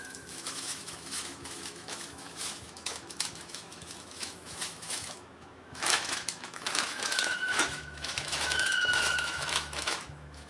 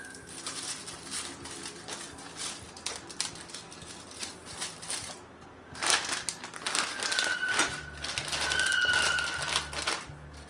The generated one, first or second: first